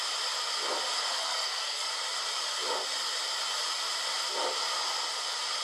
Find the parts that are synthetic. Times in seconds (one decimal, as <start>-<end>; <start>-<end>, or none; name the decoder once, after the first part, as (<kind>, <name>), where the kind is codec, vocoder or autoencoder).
1.1-1.9 (codec, SNAC)